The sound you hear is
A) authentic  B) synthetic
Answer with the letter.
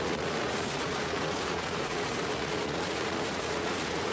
B